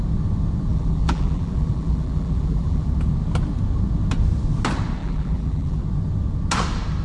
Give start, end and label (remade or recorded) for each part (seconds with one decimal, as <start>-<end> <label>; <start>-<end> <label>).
0.0-0.7 recorded; 0.7-2.9 remade; 2.9-5.0 recorded; 5.0-5.8 remade; 5.8-7.0 recorded